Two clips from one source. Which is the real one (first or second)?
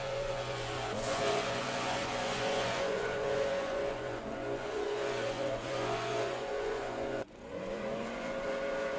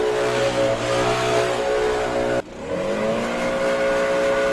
second